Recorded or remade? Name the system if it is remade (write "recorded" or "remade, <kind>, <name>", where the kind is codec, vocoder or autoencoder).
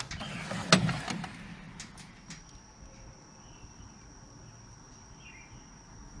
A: recorded